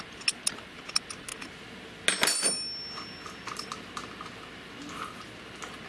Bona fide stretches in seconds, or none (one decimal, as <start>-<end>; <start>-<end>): 0.0-5.9